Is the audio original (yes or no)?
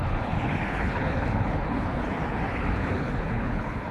no